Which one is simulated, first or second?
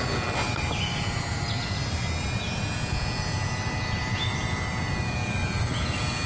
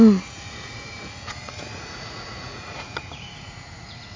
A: second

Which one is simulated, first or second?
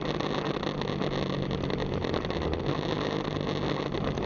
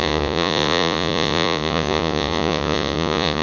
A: second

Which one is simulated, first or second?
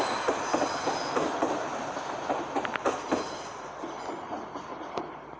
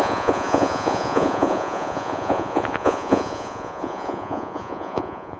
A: second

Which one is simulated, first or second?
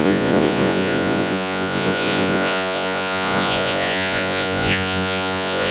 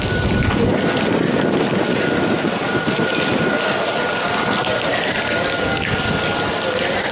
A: first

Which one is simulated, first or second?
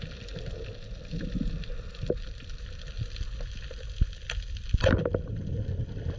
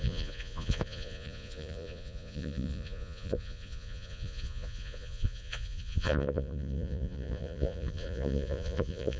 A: second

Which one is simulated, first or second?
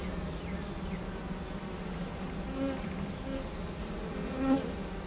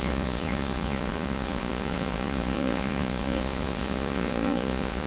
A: second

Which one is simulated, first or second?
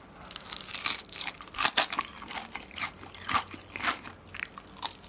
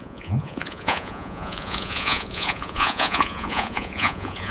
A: second